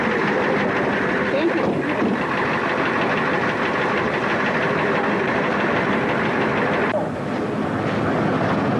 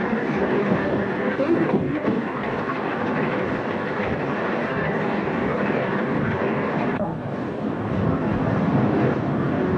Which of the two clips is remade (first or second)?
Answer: second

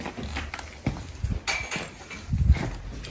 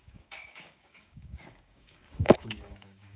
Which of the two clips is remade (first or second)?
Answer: second